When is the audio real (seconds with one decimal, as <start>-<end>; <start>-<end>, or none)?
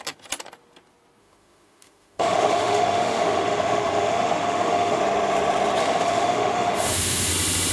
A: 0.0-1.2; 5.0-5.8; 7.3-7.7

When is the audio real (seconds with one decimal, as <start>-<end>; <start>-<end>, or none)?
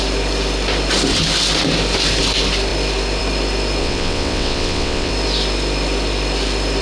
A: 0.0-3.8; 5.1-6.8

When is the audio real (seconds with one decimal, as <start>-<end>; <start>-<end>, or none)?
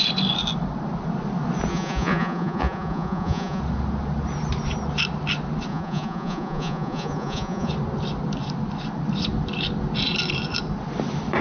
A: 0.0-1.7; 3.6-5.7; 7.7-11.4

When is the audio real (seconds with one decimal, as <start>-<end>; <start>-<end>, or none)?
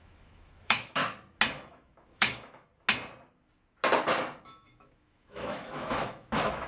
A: 1.0-1.7; 2.7-4.4